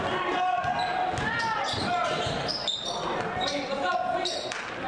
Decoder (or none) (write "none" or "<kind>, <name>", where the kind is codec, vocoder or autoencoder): none